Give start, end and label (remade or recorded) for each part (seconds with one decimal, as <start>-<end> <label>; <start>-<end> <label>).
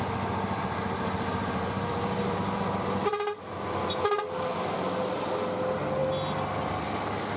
0.0-7.4 recorded